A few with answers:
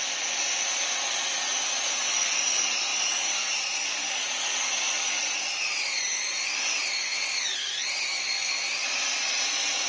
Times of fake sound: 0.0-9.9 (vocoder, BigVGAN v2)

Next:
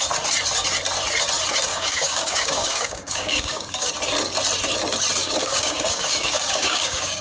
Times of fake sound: 1.7-3.9 (codec, DAC); 5.2-7.2